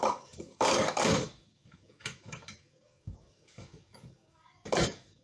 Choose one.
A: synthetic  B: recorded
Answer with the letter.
A